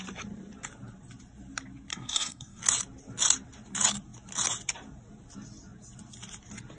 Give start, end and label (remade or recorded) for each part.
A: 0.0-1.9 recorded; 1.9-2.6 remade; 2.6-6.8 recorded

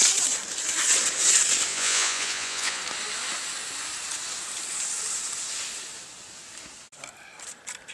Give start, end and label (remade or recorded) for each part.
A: 0.0-1.7 recorded; 1.7-2.8 remade; 2.8-7.9 recorded

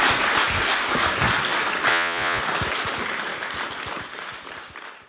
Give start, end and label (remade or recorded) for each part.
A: 0.0-1.9 recorded; 1.9-2.4 remade; 2.4-5.1 recorded

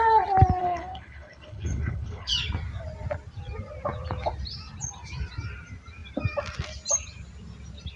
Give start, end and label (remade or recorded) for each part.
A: 0.0-0.6 recorded; 0.6-2.3 remade; 2.3-8.0 recorded

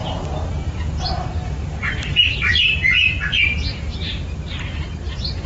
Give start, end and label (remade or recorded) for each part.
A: 0.0-5.5 recorded

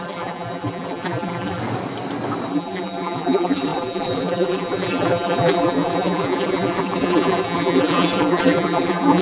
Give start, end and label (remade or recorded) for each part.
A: 0.0-1.6 remade; 1.6-2.5 recorded; 2.5-9.2 remade

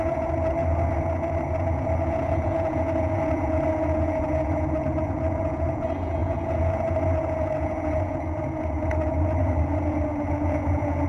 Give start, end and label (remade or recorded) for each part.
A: 0.0-11.1 remade

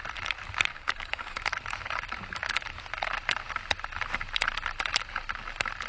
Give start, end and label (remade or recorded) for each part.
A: 0.0-0.7 recorded; 0.7-1.4 remade; 1.4-5.9 recorded